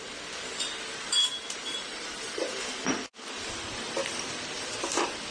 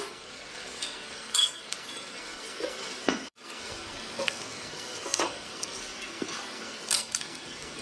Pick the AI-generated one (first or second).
second